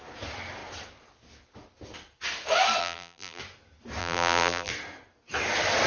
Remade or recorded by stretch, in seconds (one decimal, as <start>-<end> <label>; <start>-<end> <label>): 0.0-2.8 recorded; 2.8-3.4 remade; 3.4-4.0 recorded; 4.0-4.7 remade; 4.7-5.9 recorded